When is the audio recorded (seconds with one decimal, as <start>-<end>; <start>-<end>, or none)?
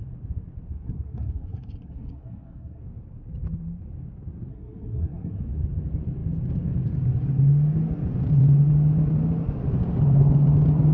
0.0-0.7; 2.8-4.5; 5.4-10.9